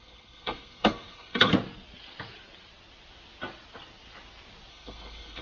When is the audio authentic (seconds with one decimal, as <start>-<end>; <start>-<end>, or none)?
1.5-4.7